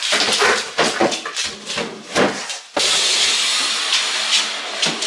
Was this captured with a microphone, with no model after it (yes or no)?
yes